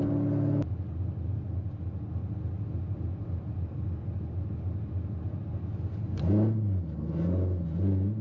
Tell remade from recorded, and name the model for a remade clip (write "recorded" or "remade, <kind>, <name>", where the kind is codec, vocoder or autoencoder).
recorded